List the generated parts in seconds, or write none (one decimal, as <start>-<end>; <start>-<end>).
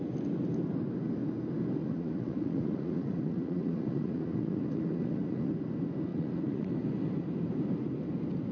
1.8-5.5; 6.1-6.7